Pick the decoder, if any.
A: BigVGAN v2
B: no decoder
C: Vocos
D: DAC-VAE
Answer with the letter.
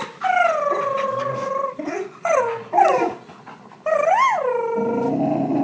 B